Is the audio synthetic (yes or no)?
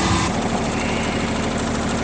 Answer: no